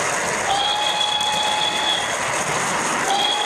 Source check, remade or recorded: recorded